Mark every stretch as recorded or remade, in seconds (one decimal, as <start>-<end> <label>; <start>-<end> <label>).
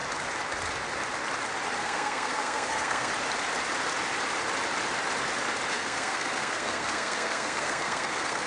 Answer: 0.0-1.8 recorded; 1.8-3.1 remade; 3.1-5.7 recorded; 5.7-8.5 remade